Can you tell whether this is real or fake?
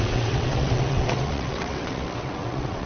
fake